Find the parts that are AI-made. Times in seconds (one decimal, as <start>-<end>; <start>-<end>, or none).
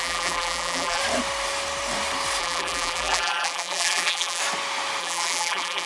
0.0-1.0; 2.4-4.4; 5.0-5.9